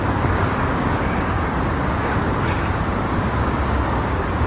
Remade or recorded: remade